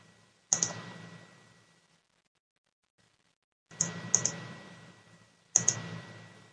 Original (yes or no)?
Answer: yes